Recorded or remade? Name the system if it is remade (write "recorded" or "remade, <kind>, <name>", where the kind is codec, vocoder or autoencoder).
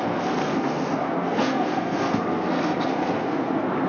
remade, codec, SNAC